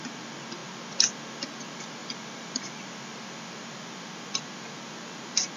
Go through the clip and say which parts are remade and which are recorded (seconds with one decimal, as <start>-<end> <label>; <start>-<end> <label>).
0.0-5.6 recorded